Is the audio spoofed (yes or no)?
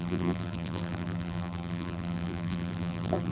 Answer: yes